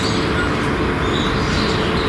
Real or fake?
real